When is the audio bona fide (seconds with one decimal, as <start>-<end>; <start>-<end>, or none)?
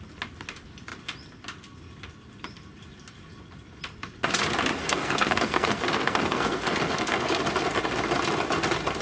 0.0-4.8; 7.4-9.0